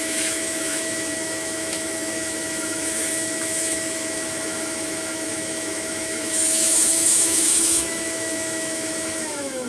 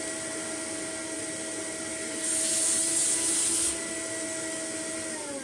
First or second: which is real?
second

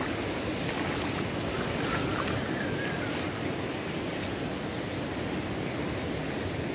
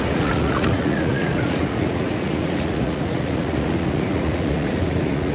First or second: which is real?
first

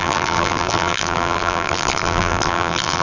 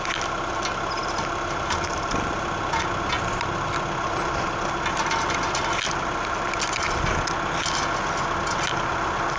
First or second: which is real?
second